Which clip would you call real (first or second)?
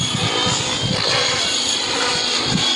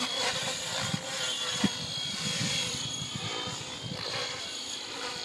first